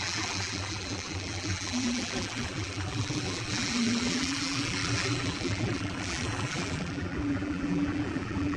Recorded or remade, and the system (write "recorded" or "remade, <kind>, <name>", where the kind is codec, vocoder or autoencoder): remade, vocoder, BigVGAN v2